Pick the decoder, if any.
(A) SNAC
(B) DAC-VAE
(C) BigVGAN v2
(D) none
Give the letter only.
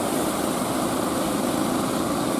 D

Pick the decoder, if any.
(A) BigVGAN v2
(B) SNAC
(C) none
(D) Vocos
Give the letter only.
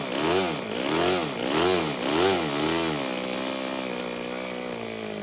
C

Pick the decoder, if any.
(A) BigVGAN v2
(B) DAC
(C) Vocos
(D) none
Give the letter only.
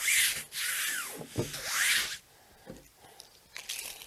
D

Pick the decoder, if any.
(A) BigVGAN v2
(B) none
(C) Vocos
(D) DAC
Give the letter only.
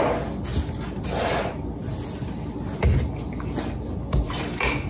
B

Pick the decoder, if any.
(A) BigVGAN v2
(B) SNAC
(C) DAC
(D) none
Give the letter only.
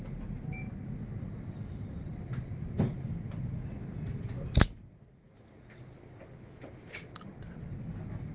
D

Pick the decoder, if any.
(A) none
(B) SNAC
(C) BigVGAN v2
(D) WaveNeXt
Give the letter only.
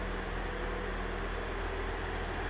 A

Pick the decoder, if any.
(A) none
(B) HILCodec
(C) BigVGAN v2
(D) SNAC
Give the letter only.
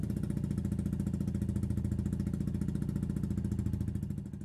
A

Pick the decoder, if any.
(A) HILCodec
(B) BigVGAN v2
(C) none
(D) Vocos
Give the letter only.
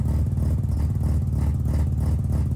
C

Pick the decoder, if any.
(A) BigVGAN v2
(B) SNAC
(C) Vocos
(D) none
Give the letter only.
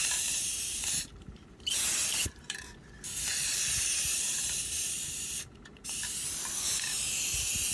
A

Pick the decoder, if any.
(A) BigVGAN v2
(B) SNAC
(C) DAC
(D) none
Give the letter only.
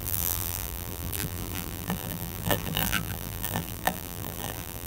A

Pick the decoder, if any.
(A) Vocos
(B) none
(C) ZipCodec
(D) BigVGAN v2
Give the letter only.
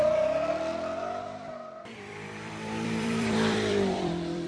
D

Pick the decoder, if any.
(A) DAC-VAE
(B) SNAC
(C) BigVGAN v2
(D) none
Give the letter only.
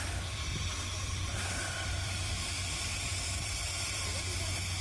C